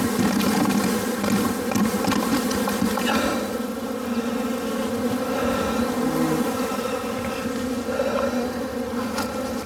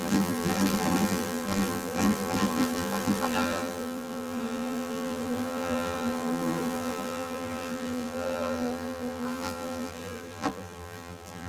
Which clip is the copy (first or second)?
second